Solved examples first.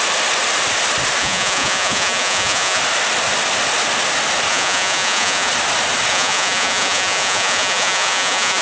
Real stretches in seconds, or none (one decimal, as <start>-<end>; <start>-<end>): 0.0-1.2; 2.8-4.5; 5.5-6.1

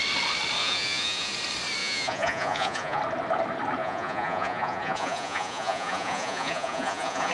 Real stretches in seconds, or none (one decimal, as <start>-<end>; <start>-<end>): 0.0-0.6; 1.3-1.8; 3.0-3.8

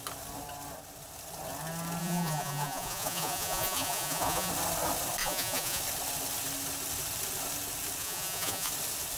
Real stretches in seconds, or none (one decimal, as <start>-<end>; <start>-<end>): 0.0-2.0; 4.5-5.2; 5.8-8.0; 8.7-9.2